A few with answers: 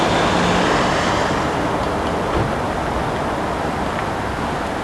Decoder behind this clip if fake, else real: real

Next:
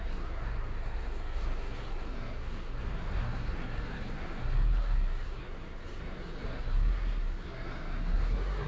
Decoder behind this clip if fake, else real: fake, codec, SNAC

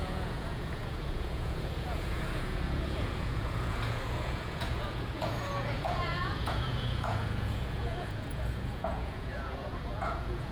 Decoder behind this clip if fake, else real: fake, vocoder, Vocos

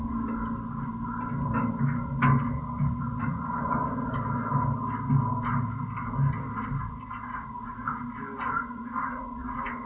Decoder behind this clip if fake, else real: real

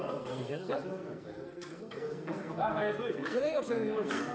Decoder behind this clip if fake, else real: fake, codec, SNAC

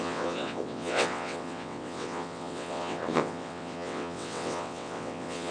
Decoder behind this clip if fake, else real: fake, vocoder, WaveNeXt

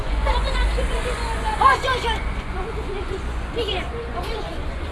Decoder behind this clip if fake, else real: fake, vocoder, Vocos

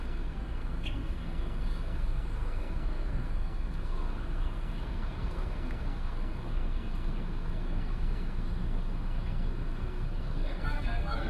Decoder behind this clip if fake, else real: fake, codec, SNAC